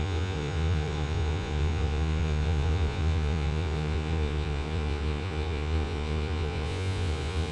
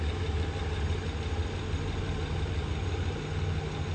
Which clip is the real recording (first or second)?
second